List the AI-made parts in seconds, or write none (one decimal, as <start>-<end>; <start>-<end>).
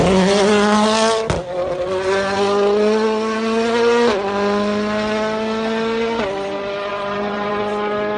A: 6.9-7.5